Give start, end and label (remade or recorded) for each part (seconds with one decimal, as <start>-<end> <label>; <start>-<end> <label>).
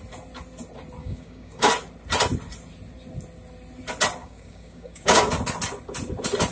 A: 0.0-1.0 recorded; 1.0-1.7 remade; 1.7-4.2 recorded; 4.2-5.3 remade; 5.3-6.5 recorded